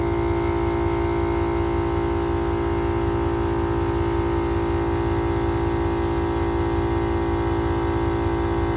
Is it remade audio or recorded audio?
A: recorded